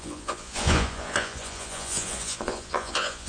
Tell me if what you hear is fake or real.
fake